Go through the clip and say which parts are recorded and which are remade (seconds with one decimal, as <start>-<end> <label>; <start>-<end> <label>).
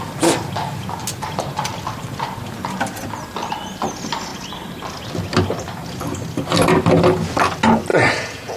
0.0-7.9 recorded; 7.9-8.6 remade